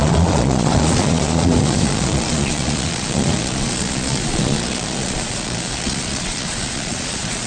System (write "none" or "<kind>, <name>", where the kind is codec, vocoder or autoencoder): vocoder, Vocos